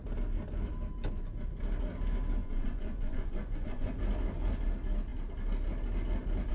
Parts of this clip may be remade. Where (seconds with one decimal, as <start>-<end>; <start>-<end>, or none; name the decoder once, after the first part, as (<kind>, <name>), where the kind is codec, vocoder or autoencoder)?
2.4-4.0 (vocoder, Vocos)